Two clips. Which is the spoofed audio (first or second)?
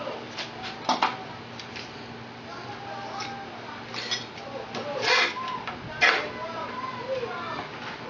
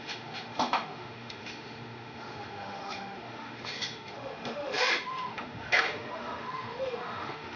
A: second